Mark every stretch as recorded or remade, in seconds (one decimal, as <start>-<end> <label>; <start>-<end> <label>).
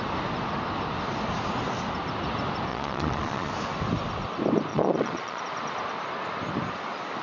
0.0-2.7 recorded; 2.7-3.5 remade; 3.5-4.7 recorded; 4.7-5.4 remade; 5.4-7.2 recorded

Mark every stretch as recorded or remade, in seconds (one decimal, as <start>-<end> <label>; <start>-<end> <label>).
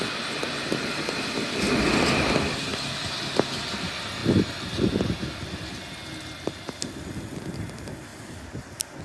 0.0-9.0 recorded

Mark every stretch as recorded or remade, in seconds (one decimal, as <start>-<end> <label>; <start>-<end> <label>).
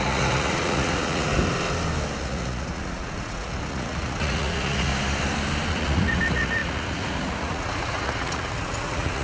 0.0-1.3 remade; 1.3-2.2 recorded; 2.2-4.9 remade; 4.9-5.7 recorded; 5.7-9.2 remade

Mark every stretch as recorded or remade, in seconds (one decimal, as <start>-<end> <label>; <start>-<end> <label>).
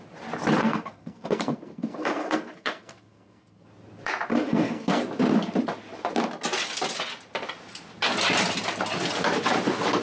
0.0-0.6 recorded; 0.6-3.7 remade; 3.7-4.3 recorded; 4.3-5.0 remade; 5.0-10.0 recorded